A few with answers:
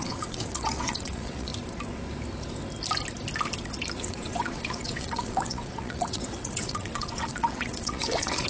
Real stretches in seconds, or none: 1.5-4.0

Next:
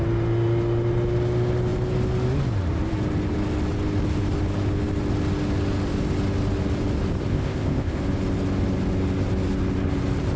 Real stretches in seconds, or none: 0.0-7.3; 8.0-10.4

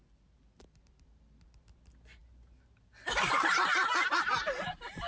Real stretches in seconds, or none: 0.0-5.1